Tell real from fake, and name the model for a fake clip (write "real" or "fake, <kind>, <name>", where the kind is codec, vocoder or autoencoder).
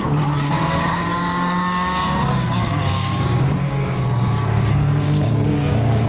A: fake, codec, DAC